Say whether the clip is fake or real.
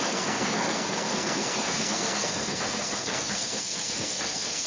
fake